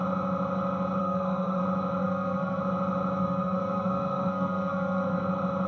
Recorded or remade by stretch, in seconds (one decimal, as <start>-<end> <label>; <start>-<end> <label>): 0.0-1.0 recorded; 1.0-1.6 remade; 1.6-2.0 recorded; 2.0-2.6 remade; 2.6-3.2 recorded; 3.2-5.3 remade; 5.3-5.7 recorded